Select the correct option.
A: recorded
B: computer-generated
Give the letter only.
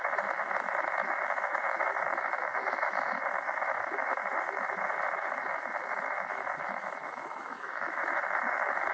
B